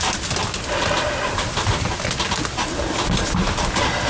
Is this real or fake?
real